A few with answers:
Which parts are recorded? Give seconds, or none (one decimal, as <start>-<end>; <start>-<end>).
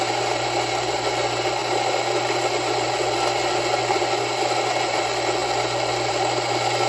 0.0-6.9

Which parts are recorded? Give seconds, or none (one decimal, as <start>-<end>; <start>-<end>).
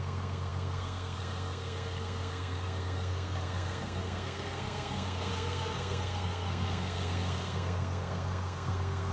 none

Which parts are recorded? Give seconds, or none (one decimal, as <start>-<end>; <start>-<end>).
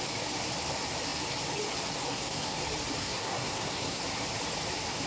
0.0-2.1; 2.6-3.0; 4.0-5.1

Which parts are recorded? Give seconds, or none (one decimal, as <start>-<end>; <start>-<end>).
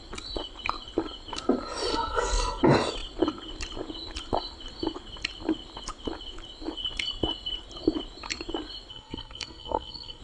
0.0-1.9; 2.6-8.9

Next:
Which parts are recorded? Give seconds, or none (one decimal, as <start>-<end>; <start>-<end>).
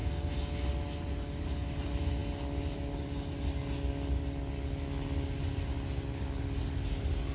0.0-7.3